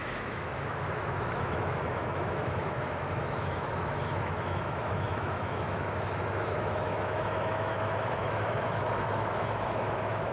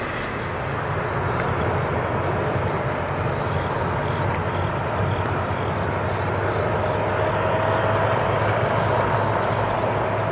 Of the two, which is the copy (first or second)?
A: first